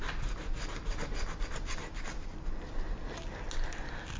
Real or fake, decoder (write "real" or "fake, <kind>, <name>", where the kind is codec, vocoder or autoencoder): real